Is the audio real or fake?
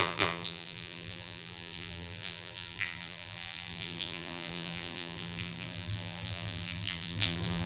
fake